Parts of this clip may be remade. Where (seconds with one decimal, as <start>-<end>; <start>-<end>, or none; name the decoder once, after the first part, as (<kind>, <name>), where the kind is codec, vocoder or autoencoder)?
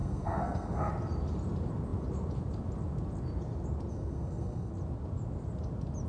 0.0-0.9 (codec, SNAC); 3.9-4.7